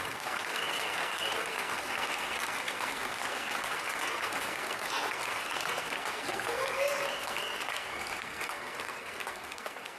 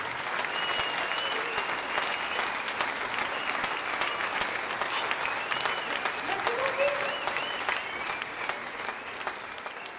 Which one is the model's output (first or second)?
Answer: first